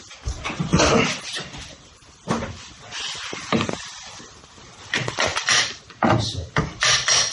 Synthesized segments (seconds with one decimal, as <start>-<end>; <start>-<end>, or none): 0.7-2.8; 5.3-5.8